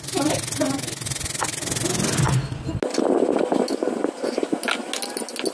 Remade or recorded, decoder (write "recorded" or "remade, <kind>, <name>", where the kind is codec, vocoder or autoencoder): recorded